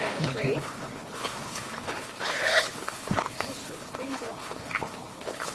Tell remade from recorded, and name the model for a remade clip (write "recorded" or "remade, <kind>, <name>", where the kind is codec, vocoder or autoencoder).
remade, codec, HILCodec